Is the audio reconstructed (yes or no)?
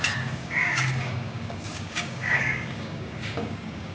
yes